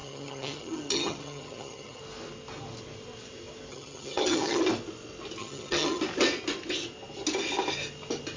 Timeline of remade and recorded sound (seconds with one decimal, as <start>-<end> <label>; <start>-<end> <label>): 0.0-2.0 remade; 2.0-3.7 recorded; 3.7-4.6 remade; 4.6-5.4 recorded; 5.4-6.0 remade; 6.0-8.4 recorded